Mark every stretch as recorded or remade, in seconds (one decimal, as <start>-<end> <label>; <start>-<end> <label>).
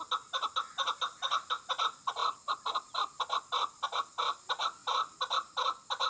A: 0.0-6.1 recorded